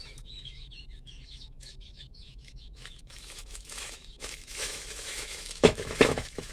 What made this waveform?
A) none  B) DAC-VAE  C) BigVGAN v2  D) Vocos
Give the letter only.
B